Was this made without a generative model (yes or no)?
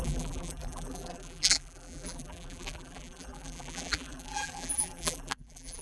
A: no